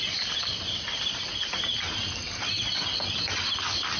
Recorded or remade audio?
recorded